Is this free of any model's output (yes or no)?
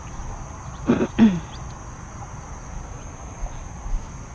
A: yes